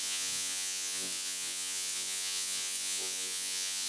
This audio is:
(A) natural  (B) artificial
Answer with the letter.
B